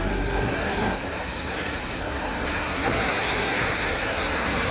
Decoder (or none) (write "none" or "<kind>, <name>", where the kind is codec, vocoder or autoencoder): codec, SNAC